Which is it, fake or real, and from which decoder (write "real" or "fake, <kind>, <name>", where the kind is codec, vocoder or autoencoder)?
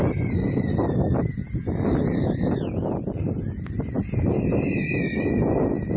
real